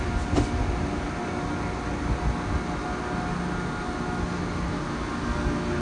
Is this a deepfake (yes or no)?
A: no